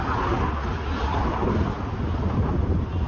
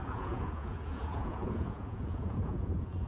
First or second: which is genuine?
first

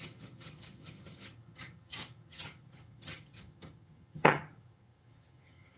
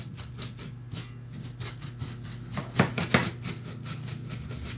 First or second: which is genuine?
second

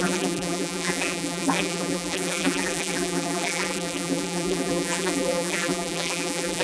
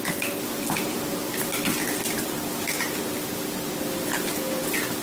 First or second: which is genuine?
second